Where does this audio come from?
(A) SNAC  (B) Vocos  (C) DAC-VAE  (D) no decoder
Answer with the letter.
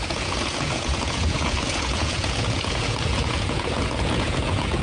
B